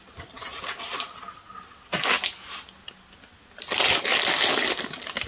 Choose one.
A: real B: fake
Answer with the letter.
A